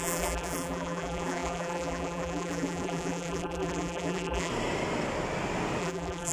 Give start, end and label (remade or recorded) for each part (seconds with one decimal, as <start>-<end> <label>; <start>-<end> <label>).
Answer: 0.0-4.5 remade; 4.5-5.8 recorded; 5.8-6.3 remade